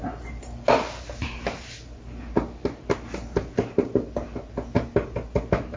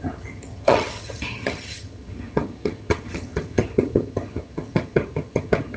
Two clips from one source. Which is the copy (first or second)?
second